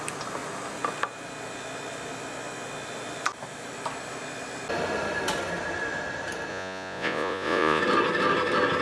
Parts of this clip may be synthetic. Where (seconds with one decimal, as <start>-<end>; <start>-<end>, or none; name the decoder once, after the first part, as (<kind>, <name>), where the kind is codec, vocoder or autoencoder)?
6.5-7.8 (vocoder, Vocos)